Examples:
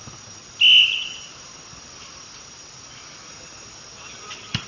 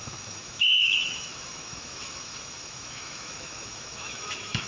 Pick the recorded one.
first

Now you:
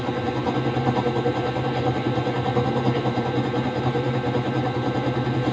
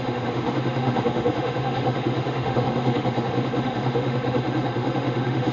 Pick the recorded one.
first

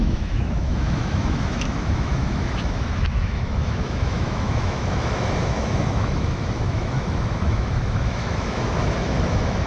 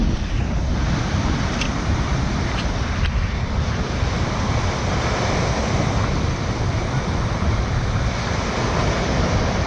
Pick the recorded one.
second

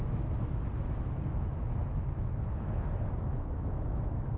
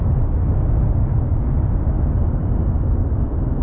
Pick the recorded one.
second